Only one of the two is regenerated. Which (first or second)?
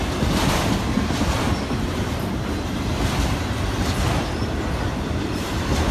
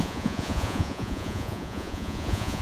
second